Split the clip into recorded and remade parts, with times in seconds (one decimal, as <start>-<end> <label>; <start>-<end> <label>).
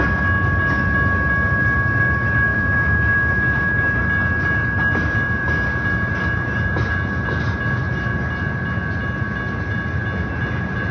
0.0-2.5 recorded; 2.5-4.0 remade; 4.0-10.9 recorded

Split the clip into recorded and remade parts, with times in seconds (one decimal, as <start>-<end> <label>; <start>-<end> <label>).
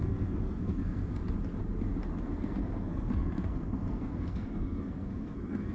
0.0-1.2 remade; 1.2-2.2 recorded; 2.2-5.7 remade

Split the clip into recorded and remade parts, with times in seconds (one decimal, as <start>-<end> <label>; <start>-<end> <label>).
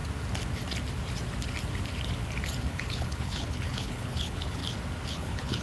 0.0-2.6 recorded; 2.6-4.6 remade; 4.6-5.1 recorded; 5.1-5.6 remade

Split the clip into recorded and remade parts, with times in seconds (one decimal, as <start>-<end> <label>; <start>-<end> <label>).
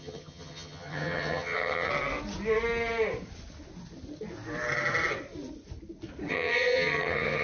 0.0-1.9 remade; 1.9-6.3 recorded; 6.3-7.4 remade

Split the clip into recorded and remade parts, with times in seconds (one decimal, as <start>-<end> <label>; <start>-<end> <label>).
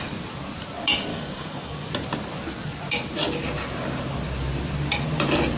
0.0-1.1 recorded; 1.1-1.9 remade; 1.9-5.6 recorded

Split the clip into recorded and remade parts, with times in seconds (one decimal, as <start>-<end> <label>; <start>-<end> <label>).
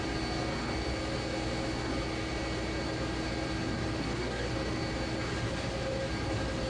0.0-4.0 recorded; 4.0-4.5 remade; 4.5-6.7 recorded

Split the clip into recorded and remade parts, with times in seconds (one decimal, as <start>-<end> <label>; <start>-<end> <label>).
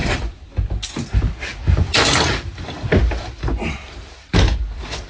0.0-0.7 remade; 0.7-3.4 recorded; 3.4-4.1 remade; 4.1-5.1 recorded